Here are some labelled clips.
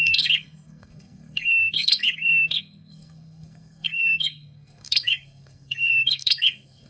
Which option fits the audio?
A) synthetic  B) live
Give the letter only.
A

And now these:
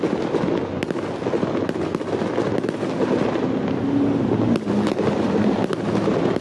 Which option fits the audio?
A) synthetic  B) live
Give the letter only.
B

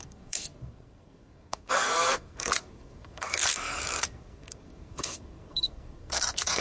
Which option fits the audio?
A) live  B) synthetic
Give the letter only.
B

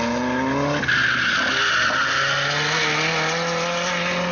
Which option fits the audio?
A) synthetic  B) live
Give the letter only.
B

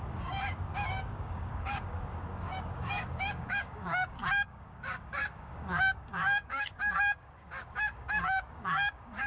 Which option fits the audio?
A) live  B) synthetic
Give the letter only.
B